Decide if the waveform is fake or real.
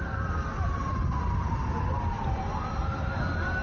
real